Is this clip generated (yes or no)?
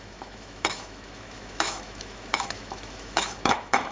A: yes